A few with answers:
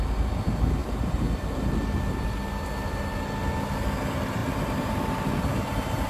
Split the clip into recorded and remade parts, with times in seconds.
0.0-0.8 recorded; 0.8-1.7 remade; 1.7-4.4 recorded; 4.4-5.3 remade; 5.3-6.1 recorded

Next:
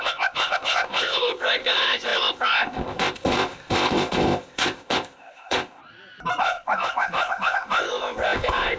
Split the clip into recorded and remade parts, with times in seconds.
0.0-5.8 remade; 5.8-6.4 recorded; 6.4-8.8 remade

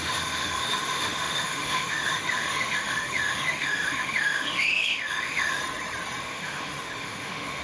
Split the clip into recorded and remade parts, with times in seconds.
0.0-5.6 remade; 5.6-6.2 recorded; 6.2-7.6 remade

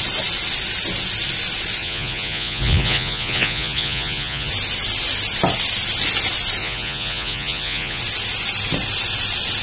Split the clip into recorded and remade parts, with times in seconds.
0.0-1.8 recorded; 1.8-4.5 remade; 4.5-6.6 recorded; 6.6-8.0 remade; 8.0-9.6 recorded

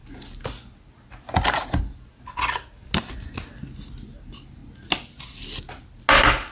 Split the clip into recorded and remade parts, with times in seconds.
0.0-6.5 recorded

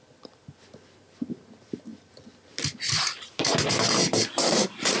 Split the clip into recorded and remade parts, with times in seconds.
0.0-5.0 recorded

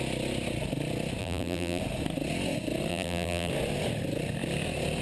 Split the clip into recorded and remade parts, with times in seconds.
0.0-1.2 recorded; 1.2-1.8 remade; 1.8-2.9 recorded; 2.9-3.5 remade; 3.5-5.0 recorded

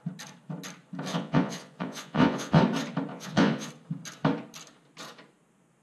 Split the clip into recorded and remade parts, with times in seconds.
0.0-1.1 recorded; 1.1-2.6 remade; 2.6-3.1 recorded; 3.1-3.7 remade; 3.7-5.8 recorded